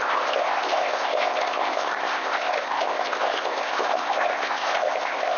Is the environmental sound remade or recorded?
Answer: remade